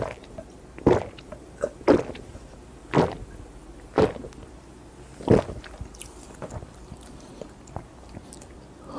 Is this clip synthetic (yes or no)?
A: no